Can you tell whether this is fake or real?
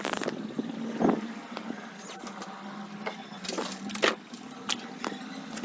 real